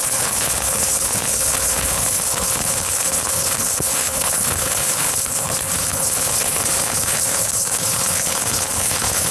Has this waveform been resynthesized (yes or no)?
yes